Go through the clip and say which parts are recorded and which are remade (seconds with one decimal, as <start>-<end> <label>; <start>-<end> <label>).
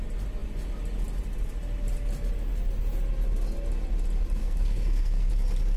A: 0.0-4.4 recorded; 4.4-5.3 remade; 5.3-5.8 recorded